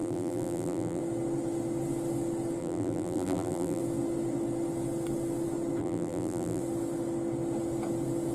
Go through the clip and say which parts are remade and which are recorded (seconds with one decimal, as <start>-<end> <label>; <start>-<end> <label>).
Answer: 0.0-1.0 remade; 1.0-2.6 recorded; 2.6-3.8 remade; 3.8-5.8 recorded; 5.8-6.6 remade; 6.6-8.3 recorded